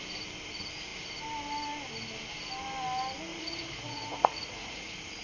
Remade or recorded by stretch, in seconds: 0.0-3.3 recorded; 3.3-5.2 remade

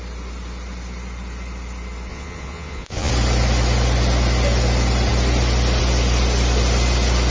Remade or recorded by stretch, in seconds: 0.0-2.1 recorded; 2.1-3.1 remade; 3.1-7.3 recorded

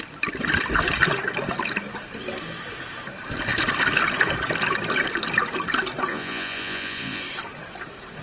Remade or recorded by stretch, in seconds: 0.0-6.1 recorded; 6.1-7.2 remade; 7.2-8.2 recorded

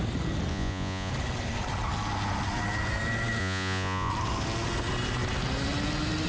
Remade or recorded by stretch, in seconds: 0.0-0.5 recorded; 0.5-1.1 remade; 1.1-3.4 recorded; 3.4-4.1 remade; 4.1-6.3 recorded

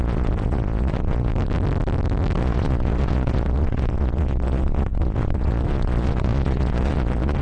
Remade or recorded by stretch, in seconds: 0.0-1.3 remade; 1.3-2.4 recorded; 2.4-7.4 remade

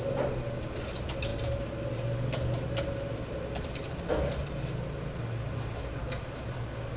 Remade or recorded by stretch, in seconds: 0.0-7.0 recorded

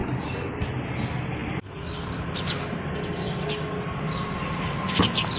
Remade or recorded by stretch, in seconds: 0.0-5.4 recorded